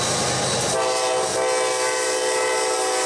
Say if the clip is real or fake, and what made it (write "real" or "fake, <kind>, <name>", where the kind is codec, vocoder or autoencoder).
real